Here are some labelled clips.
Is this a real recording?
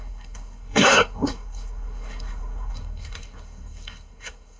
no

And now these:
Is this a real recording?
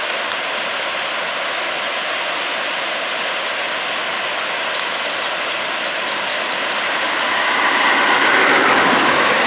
yes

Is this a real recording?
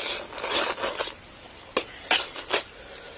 yes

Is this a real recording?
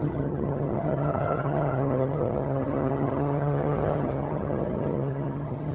no